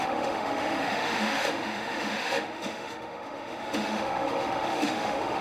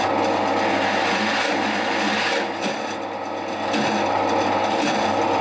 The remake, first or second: first